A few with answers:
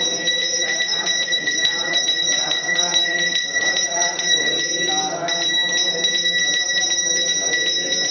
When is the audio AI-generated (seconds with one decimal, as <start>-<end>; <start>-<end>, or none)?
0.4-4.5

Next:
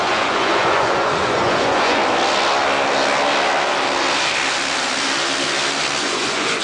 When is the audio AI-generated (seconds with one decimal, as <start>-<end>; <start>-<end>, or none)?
0.0-2.0; 6.0-6.6

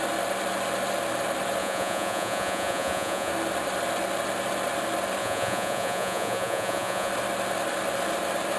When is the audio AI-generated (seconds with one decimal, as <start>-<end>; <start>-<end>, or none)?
1.6-3.3; 5.2-7.1